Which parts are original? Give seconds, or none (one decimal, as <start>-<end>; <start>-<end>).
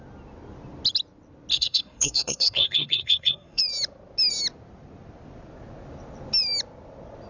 0.0-1.5; 3.6-7.3